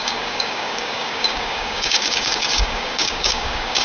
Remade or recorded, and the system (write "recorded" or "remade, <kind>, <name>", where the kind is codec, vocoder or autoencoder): remade, codec, DAC